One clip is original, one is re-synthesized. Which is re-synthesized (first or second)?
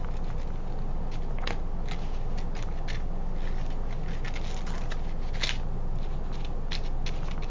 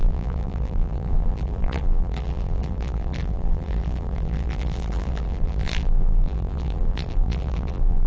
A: second